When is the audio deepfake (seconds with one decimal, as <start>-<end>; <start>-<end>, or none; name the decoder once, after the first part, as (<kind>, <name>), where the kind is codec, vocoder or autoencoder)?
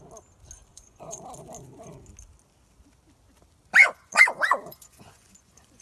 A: 0.7-1.2 (vocoder, Vocos); 3.8-5.8